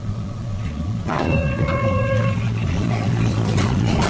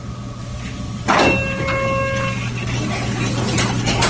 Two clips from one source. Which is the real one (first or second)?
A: second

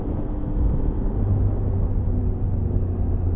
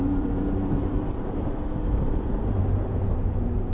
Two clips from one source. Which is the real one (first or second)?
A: first